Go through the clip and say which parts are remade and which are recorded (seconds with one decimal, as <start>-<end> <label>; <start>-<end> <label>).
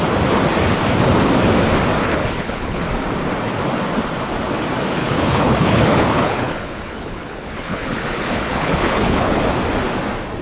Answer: 0.0-2.0 recorded; 2.0-2.8 remade; 2.8-5.0 recorded; 5.0-9.4 remade; 9.4-10.4 recorded